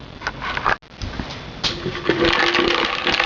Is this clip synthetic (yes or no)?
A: no